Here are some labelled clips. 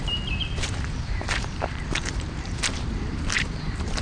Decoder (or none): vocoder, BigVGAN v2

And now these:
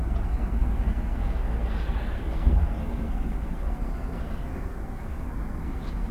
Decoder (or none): codec, SNAC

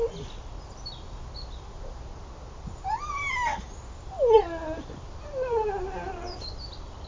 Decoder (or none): none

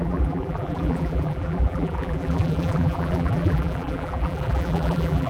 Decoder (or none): vocoder, BigVGAN v2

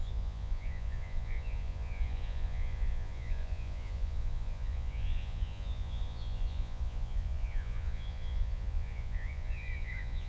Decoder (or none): vocoder, Vocos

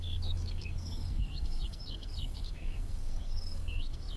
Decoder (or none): codec, SNAC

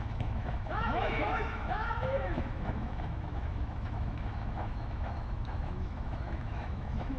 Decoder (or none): autoencoder, DAC-VAE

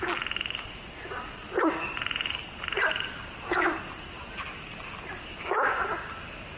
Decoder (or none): none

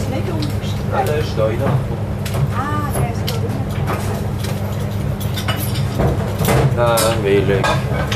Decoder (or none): none